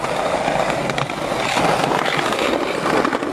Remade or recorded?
recorded